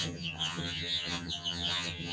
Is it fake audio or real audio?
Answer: fake